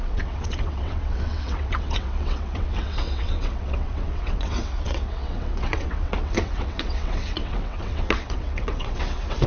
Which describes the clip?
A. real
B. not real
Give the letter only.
B